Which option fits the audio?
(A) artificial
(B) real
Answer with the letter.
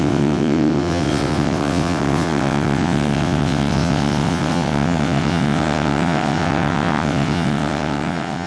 A